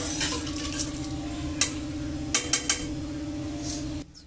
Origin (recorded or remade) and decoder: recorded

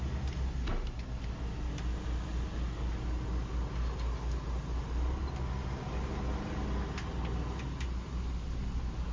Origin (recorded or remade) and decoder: recorded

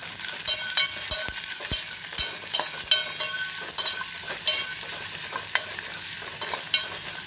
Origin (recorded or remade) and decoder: recorded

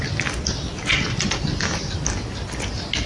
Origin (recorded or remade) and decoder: recorded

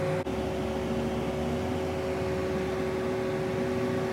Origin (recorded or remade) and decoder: recorded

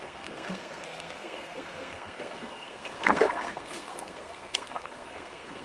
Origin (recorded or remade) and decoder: remade, codec, SNAC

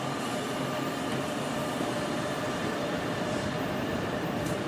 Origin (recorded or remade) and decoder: remade, vocoder, BigVGAN v2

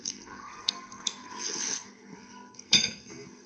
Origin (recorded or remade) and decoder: remade, codec, SNAC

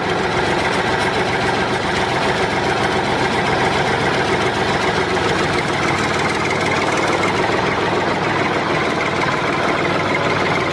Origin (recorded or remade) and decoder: recorded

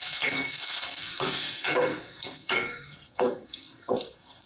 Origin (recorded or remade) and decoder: remade, codec, SNAC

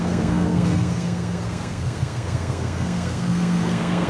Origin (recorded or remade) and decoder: remade, codec, SNAC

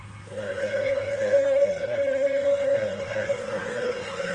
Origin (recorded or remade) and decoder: remade, codec, SNAC